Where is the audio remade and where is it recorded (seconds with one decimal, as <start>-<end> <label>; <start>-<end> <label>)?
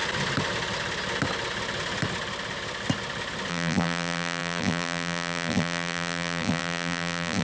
0.0-3.5 recorded; 3.5-7.4 remade